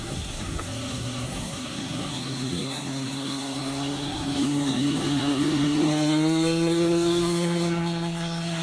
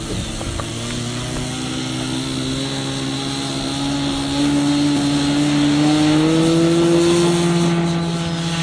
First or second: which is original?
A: second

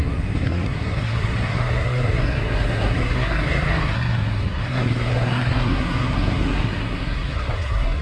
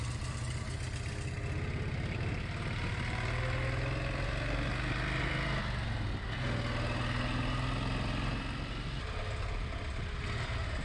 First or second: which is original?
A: second